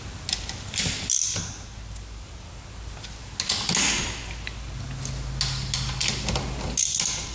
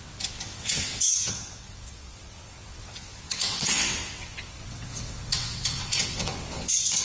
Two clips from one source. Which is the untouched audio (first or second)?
first